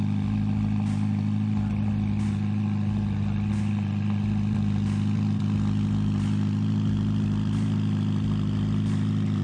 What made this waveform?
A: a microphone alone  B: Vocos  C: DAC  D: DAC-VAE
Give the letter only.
A